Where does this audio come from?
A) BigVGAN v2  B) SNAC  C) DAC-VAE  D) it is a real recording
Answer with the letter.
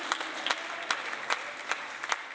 D